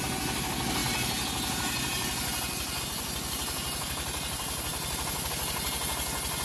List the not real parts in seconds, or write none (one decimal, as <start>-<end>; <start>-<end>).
none